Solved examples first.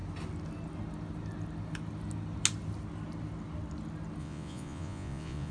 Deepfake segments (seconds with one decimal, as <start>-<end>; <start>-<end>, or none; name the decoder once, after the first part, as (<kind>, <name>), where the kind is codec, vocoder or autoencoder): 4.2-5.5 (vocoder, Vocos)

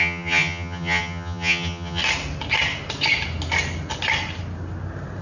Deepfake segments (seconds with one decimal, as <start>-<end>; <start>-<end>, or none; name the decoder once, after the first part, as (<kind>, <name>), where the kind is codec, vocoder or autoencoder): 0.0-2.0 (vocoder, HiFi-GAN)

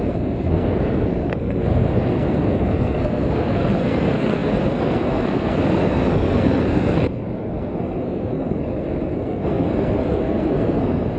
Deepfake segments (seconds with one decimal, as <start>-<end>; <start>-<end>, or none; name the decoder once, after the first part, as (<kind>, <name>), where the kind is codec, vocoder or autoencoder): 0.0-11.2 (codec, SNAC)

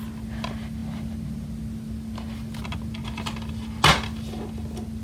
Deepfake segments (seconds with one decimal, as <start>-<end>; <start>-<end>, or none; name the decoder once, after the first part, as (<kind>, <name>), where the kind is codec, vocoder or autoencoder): none

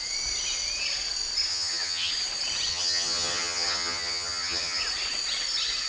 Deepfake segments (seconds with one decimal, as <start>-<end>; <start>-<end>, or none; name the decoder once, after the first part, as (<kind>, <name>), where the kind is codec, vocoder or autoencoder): 1.5-2.1 (vocoder, HiFi-GAN); 2.7-4.8

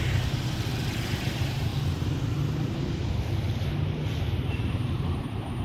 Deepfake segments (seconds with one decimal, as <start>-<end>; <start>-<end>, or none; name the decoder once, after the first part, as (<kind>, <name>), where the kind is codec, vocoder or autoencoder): 0.0-1.7 (vocoder, BigVGAN v2); 3.1-5.6

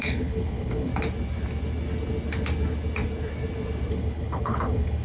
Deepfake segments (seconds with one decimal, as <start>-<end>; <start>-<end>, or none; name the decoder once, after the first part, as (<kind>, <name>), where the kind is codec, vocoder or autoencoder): 0.0-0.9 (codec, HILCodec); 3.9-5.0